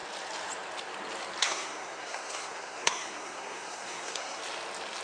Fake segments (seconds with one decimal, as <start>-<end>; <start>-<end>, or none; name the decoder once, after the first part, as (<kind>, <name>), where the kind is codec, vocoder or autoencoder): 1.4-4.4 (codec, SNAC)